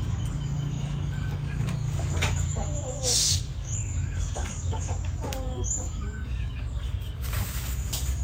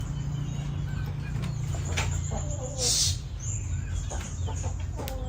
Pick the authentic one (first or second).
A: second